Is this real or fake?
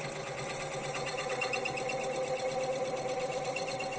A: real